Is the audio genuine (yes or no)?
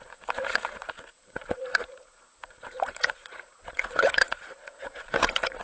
no